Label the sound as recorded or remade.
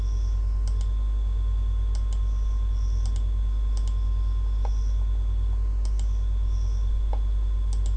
recorded